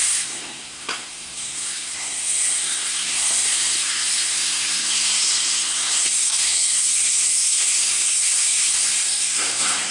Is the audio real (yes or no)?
no